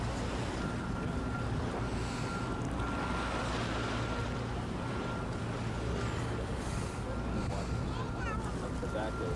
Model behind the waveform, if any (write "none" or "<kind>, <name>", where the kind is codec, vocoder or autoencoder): none